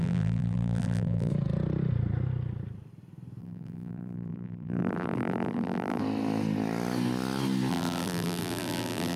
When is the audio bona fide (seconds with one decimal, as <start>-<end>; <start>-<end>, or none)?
1.3-3.4; 6.0-7.7